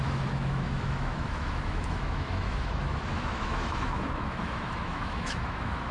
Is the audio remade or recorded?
remade